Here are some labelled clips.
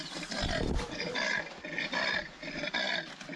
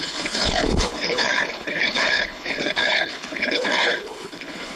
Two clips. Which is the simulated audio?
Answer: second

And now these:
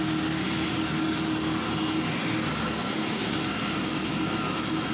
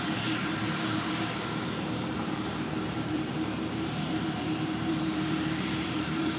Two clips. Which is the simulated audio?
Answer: second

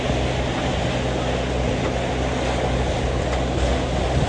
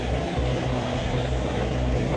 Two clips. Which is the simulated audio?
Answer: second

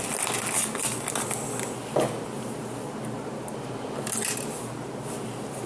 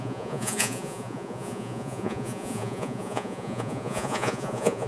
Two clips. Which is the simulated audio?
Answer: second